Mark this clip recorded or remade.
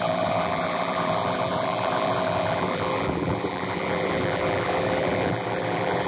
remade